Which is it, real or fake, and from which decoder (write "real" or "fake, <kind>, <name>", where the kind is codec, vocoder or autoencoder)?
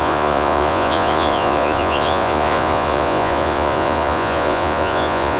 fake, vocoder, Vocos